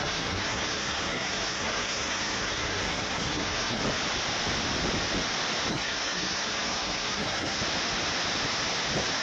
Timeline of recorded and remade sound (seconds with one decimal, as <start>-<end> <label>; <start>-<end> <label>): 0.0-3.8 remade; 3.8-5.7 recorded; 5.7-7.6 remade; 7.6-9.2 recorded